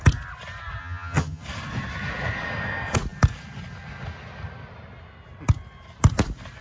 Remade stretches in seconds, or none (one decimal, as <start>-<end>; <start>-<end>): 0.8-1.4